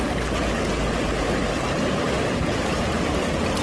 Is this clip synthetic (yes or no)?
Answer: no